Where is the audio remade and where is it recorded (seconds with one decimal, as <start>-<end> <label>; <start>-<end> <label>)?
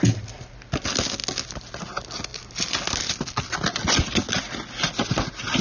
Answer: 0.0-5.6 recorded